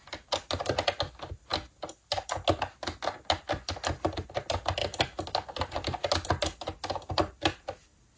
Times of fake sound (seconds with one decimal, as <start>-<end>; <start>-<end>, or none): none